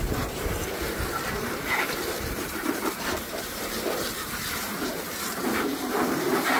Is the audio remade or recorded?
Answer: remade